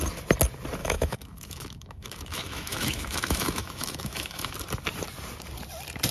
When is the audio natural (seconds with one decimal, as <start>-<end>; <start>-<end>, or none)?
0.0-0.8; 4.5-6.1